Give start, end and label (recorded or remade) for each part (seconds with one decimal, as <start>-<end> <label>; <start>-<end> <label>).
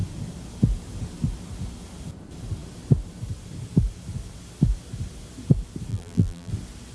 0.0-5.9 recorded; 5.9-6.5 remade; 6.5-6.9 recorded